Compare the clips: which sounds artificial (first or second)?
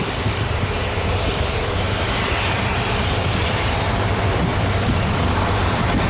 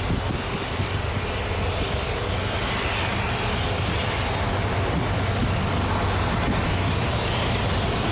first